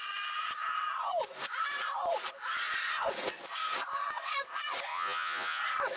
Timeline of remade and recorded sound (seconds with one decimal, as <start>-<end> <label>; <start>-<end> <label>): 0.0-4.9 recorded; 4.9-5.6 remade; 5.6-6.0 recorded